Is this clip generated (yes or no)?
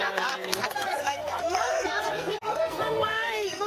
yes